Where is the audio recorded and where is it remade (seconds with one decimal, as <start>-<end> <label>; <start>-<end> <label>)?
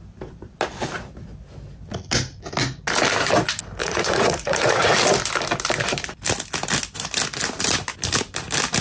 0.0-3.8 recorded; 3.8-4.9 remade; 4.9-8.8 recorded